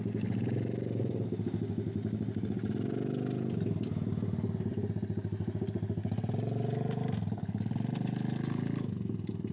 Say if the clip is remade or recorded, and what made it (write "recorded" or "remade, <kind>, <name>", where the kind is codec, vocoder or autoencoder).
recorded